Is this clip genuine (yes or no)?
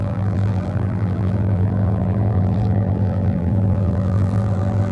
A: no